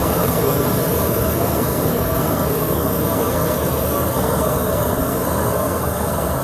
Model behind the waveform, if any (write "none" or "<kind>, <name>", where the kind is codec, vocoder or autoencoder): codec, SNAC